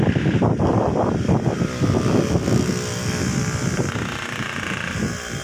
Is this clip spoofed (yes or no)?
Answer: no